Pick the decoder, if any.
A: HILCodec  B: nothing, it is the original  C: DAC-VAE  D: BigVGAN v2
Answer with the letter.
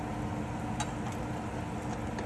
B